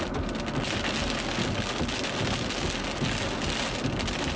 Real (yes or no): yes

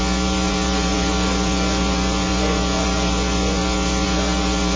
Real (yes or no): no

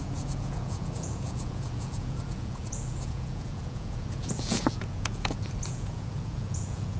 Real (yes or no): no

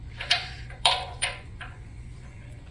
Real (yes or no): no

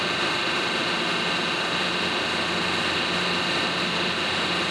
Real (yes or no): yes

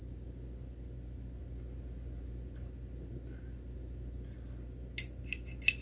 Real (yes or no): yes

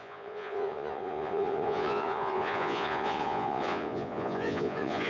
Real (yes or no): no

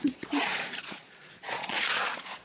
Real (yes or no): no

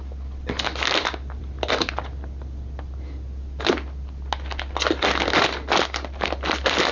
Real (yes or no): yes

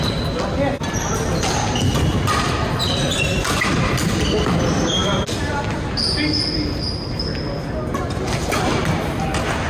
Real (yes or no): yes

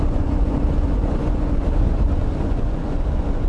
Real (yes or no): no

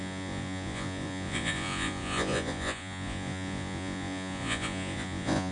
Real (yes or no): no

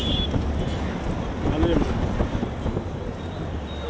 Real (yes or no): yes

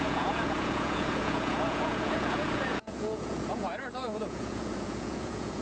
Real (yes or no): no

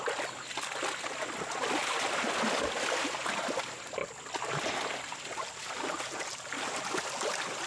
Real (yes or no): yes